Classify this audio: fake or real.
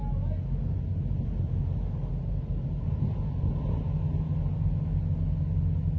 real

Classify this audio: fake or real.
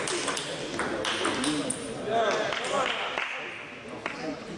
real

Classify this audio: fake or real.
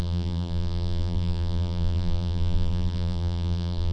fake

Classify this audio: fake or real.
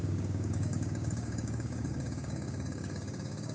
fake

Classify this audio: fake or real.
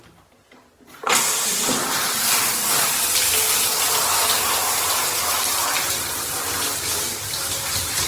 real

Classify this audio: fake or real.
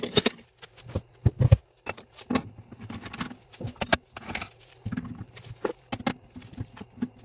real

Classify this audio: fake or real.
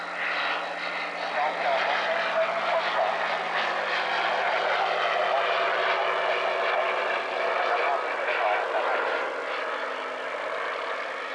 real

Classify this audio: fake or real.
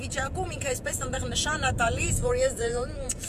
fake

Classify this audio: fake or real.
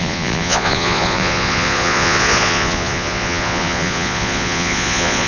fake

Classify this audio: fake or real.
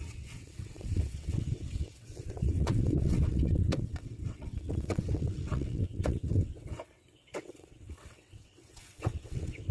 fake